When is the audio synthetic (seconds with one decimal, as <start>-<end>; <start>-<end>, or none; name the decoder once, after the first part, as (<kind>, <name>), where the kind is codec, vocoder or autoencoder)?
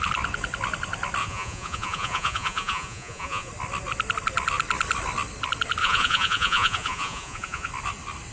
1.2-3.5 (vocoder, Vocos); 5.8-7.7